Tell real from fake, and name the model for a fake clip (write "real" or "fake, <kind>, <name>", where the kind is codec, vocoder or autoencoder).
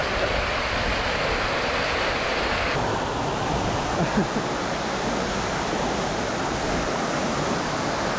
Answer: real